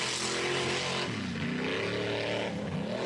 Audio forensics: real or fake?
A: real